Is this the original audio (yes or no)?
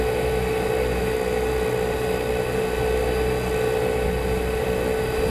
yes